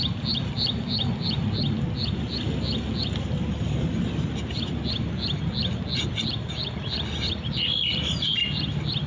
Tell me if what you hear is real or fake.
real